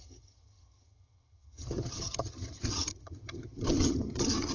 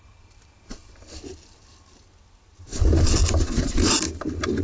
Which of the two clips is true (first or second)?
second